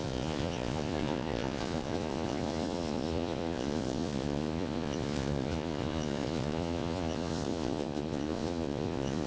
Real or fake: fake